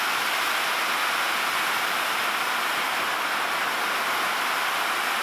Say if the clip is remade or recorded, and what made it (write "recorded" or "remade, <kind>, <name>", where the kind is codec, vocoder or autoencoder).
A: recorded